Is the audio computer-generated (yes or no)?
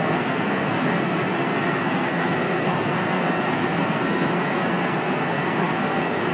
yes